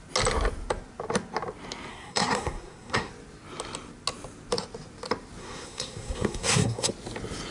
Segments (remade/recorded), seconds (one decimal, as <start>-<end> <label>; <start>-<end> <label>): 0.0-1.9 recorded; 1.9-3.1 remade; 3.1-5.4 recorded; 5.4-6.9 remade; 6.9-7.5 recorded